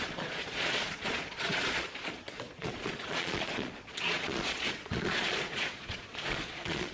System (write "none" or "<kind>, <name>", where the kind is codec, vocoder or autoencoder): vocoder, Vocos